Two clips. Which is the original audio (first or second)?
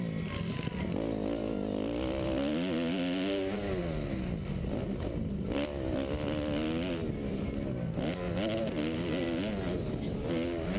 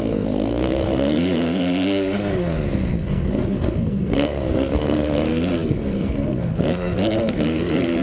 first